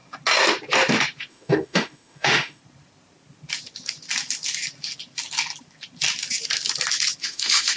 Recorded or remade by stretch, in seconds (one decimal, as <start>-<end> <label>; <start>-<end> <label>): 0.0-1.3 recorded; 1.3-2.6 remade; 2.6-7.2 recorded; 7.2-7.8 remade